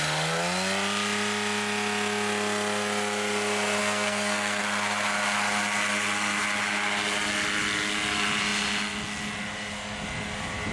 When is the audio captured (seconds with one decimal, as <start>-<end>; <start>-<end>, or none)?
0.0-3.8; 4.6-10.7

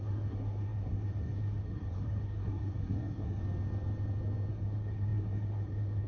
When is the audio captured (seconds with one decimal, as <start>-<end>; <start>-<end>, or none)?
3.4-4.5

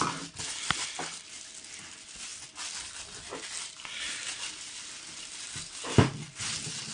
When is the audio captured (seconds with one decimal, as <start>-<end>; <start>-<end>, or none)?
0.0-6.9

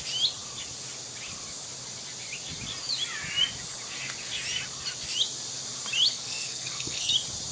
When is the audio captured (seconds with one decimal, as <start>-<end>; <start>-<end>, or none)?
0.0-6.1; 7.1-7.5

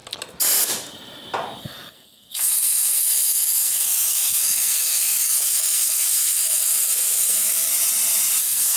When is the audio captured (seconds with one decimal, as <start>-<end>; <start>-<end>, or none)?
0.0-1.6; 7.7-8.4

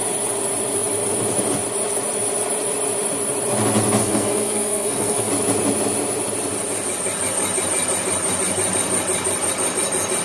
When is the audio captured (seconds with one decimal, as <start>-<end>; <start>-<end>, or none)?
0.0-4.0; 5.3-10.2